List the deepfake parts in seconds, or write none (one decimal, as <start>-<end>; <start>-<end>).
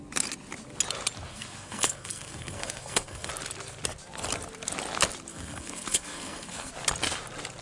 1.3-3.3; 5.3-6.7